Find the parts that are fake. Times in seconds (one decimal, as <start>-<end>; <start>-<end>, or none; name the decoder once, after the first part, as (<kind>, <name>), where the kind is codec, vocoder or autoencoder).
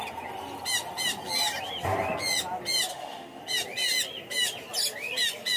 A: 2.9-3.4 (autoencoder, DAC-VAE)